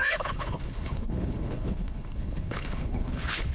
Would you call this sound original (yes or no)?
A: no